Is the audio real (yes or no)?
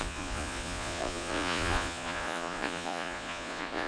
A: no